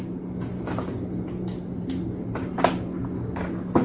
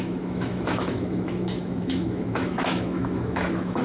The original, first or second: first